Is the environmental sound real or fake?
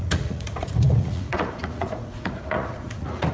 fake